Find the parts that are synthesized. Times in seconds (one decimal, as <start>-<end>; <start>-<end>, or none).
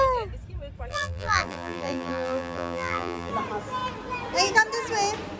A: 0.9-3.3